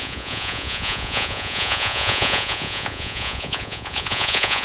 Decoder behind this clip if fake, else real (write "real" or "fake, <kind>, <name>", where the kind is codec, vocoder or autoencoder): fake, vocoder, Vocos